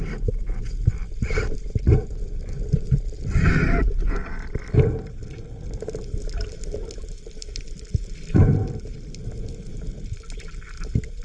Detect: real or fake real